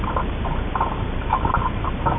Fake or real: real